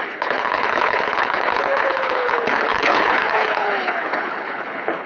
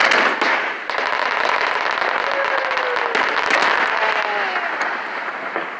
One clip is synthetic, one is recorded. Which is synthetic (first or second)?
first